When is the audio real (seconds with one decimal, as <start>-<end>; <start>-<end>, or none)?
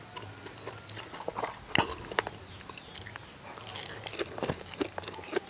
0.0-5.5